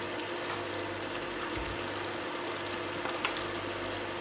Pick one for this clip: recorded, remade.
recorded